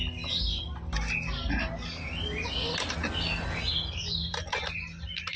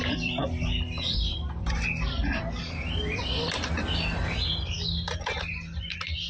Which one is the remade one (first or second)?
second